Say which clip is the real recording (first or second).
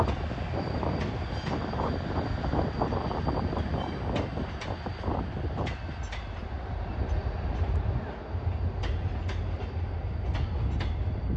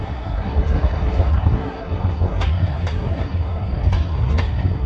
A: first